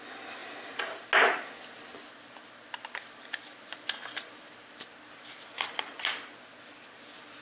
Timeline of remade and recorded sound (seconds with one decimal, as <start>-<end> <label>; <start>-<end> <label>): 0.0-7.4 recorded